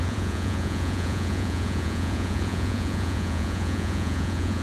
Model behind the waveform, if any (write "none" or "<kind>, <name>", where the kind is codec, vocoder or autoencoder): vocoder, Vocos